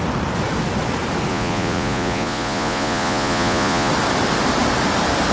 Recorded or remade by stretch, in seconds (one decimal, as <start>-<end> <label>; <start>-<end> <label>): 0.0-1.3 recorded; 1.3-3.9 remade; 3.9-5.3 recorded